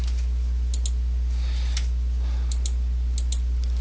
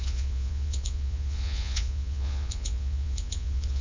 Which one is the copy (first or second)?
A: second